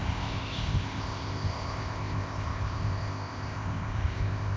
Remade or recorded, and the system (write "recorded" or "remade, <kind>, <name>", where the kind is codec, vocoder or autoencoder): remade, codec, ZipCodec